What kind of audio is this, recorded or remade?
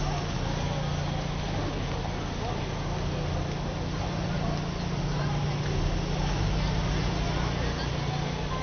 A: recorded